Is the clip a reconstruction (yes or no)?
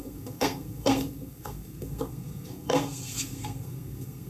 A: yes